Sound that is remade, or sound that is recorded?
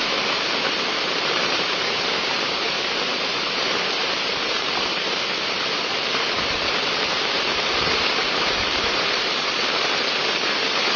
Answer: remade